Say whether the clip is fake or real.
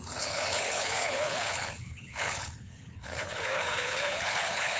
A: fake